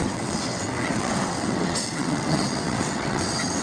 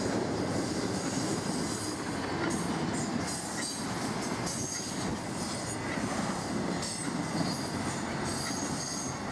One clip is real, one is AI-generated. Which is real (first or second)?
second